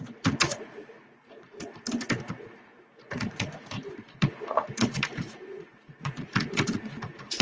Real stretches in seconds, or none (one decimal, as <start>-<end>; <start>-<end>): 1.7-2.2